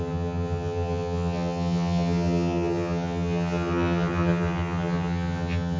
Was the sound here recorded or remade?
remade